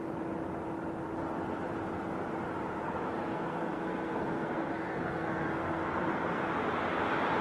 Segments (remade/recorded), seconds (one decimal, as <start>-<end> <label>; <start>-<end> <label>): 0.0-3.3 recorded; 3.3-6.4 remade; 6.4-7.4 recorded